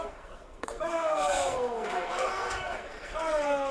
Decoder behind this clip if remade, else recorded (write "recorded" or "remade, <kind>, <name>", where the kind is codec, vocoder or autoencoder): remade, codec, SNAC